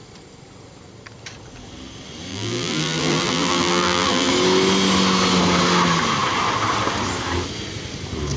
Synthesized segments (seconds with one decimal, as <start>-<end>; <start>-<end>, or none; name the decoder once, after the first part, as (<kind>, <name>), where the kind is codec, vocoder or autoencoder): 2.3-4.3 (vocoder, BigVGAN v2)